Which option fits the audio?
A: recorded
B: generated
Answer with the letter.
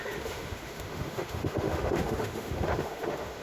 B